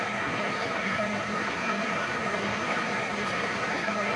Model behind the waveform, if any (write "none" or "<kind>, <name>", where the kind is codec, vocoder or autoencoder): codec, SNAC